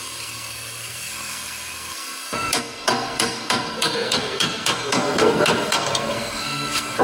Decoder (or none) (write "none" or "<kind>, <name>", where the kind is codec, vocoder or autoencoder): codec, SNAC